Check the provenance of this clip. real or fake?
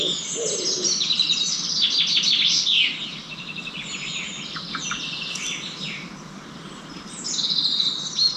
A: real